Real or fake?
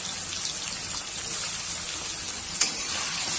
real